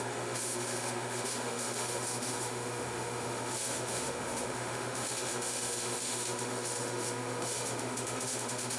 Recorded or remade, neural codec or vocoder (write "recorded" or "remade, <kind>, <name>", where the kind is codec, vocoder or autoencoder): remade, autoencoder, DAC-VAE